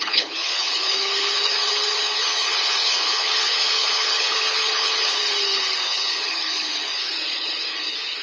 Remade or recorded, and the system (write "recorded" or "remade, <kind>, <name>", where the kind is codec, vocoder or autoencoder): remade, codec, HILCodec